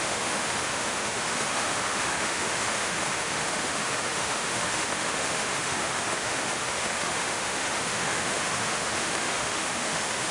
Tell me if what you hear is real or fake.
fake